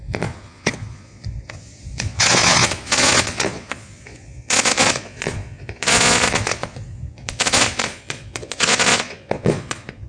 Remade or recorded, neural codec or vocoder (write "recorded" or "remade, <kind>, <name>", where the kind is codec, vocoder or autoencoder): remade, vocoder, Vocos